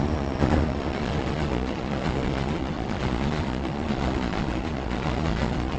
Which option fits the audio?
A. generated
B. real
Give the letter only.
A